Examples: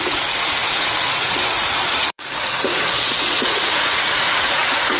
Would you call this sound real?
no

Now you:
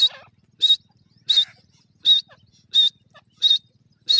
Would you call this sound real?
yes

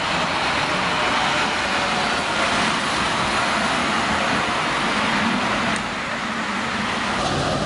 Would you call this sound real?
yes